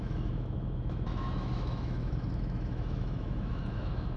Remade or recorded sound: remade